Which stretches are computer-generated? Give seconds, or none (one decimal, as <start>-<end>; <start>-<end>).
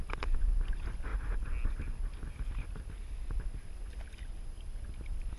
none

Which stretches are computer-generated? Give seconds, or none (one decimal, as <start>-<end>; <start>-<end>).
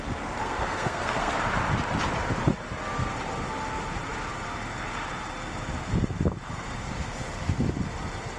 0.4-1.3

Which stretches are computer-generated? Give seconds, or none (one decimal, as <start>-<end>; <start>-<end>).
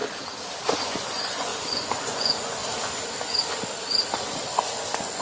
0.8-2.6; 4.6-5.2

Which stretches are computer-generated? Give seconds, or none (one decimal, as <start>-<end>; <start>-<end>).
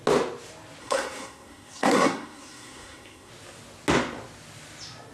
0.8-3.3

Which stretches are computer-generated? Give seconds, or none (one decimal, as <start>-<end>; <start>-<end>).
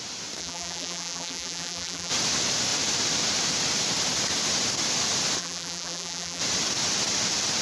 0.4-2.1; 5.4-6.4